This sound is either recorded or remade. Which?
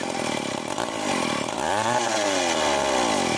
recorded